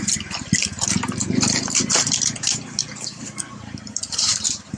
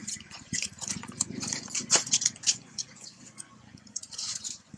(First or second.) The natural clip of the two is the first